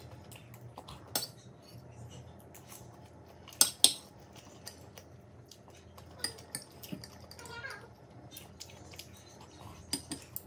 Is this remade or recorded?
recorded